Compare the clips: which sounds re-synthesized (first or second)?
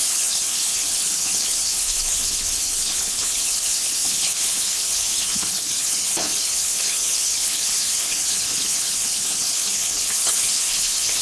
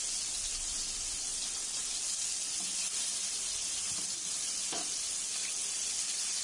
first